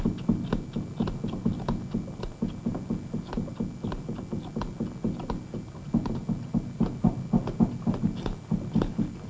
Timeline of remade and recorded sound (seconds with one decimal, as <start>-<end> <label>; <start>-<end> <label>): 0.0-9.3 recorded